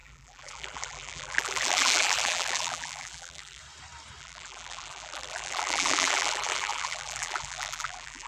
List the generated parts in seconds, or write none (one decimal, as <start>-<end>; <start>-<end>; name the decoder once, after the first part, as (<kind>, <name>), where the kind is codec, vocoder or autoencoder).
0.0-3.6 (vocoder, BigVGAN v2); 4.2-8.3